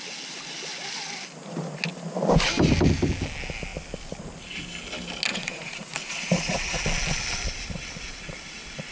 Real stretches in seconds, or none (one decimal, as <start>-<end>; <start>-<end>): 0.0-5.3; 6.8-8.9